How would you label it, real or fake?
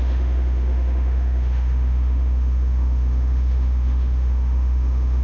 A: fake